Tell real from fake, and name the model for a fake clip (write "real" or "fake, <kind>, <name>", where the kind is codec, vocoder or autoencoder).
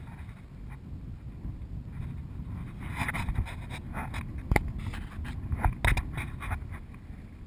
real